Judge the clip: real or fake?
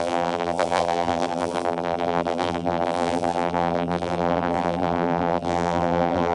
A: fake